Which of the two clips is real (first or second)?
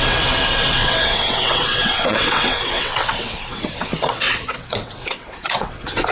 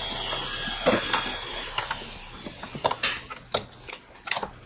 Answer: second